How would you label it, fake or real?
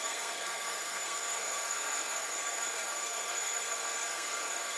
fake